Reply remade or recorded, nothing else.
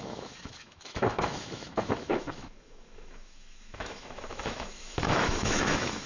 remade